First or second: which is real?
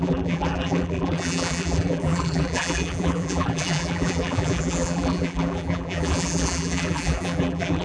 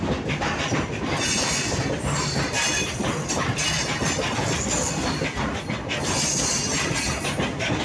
second